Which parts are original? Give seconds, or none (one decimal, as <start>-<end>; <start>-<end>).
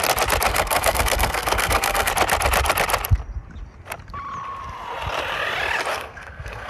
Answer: 0.0-0.5; 2.1-5.9